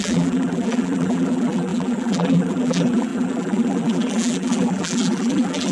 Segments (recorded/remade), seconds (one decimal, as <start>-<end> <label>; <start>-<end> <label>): 0.0-5.7 remade